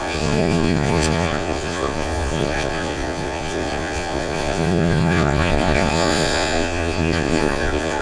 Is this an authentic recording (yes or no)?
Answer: no